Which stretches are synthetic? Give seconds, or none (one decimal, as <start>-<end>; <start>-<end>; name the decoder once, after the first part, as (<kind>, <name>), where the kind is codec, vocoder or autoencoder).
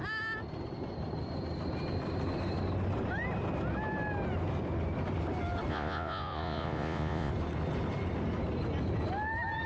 5.7-7.3 (vocoder, Vocos)